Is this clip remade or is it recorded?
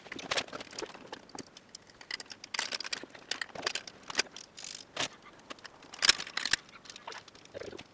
recorded